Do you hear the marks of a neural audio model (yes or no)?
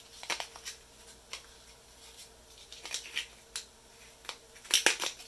no